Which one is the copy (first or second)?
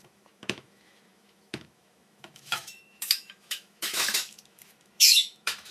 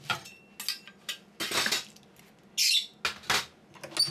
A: first